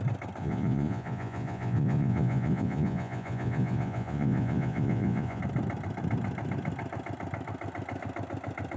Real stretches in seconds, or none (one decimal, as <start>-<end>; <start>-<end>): 0.0-0.4; 5.4-8.8